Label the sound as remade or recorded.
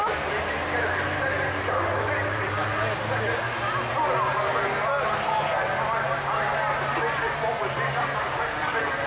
recorded